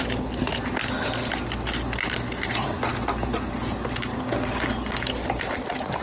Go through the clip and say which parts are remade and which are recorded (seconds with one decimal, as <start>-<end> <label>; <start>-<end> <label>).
0.0-6.0 recorded

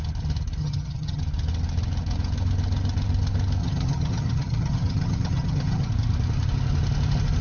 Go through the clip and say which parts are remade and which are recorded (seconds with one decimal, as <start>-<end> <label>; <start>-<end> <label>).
0.0-0.6 recorded; 0.6-1.2 remade; 1.2-3.6 recorded; 3.6-5.9 remade; 5.9-7.4 recorded

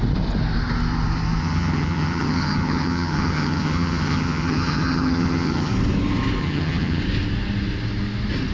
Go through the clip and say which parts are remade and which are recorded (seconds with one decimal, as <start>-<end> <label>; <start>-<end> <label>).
0.0-1.4 recorded; 1.4-5.7 remade; 5.7-6.4 recorded; 6.4-7.0 remade; 7.0-8.5 recorded

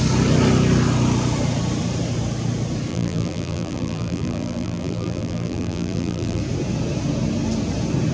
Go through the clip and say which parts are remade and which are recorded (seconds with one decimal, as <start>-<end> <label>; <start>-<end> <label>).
0.0-2.9 recorded; 2.9-6.4 remade; 6.4-8.1 recorded

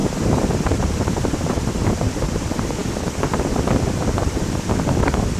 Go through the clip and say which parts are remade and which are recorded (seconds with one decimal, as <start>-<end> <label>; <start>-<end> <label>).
0.0-2.1 remade; 2.1-5.4 recorded

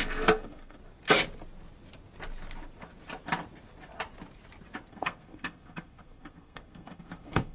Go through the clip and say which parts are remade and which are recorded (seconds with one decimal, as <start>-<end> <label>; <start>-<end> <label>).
0.0-0.8 remade; 0.8-4.9 recorded; 4.9-7.5 remade